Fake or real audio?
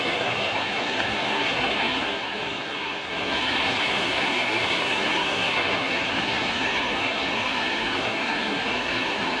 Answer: fake